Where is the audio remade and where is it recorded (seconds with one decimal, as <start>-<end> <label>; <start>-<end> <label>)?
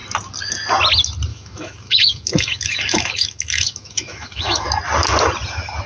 0.0-1.3 recorded; 1.3-4.8 remade; 4.8-5.9 recorded